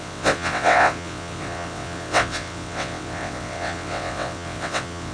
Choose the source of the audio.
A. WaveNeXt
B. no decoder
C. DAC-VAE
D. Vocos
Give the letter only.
A